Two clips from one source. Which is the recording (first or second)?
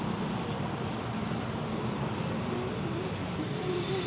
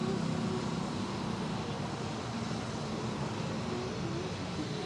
second